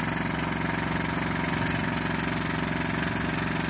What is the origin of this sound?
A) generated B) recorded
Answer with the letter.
B